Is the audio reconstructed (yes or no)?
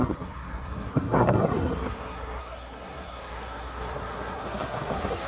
yes